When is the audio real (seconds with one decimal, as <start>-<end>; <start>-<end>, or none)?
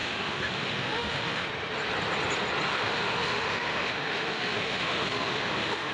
1.5-2.7